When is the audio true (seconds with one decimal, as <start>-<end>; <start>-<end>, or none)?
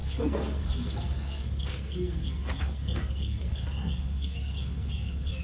none